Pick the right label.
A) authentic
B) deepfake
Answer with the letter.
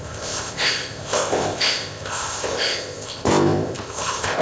B